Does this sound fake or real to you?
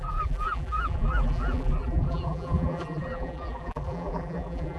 fake